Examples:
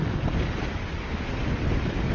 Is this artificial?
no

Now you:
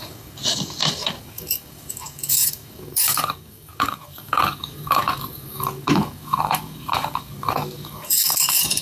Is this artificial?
yes